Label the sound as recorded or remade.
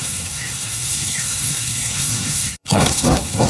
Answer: remade